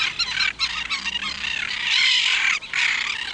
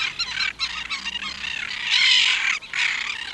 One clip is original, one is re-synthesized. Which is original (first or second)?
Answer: second